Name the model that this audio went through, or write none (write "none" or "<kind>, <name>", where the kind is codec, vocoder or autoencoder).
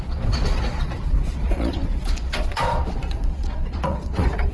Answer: vocoder, Vocos